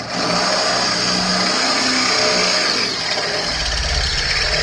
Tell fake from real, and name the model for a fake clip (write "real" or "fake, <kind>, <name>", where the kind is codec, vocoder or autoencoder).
real